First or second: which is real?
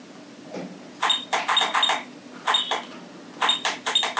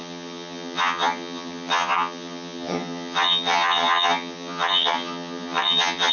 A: first